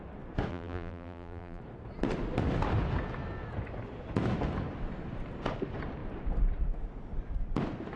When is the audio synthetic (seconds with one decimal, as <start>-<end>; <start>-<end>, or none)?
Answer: 0.5-1.6